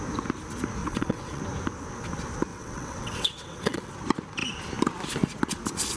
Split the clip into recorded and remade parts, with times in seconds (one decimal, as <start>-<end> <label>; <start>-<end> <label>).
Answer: 0.0-0.8 recorded; 0.8-1.4 remade; 1.4-2.5 recorded; 2.5-3.9 remade; 3.9-6.0 recorded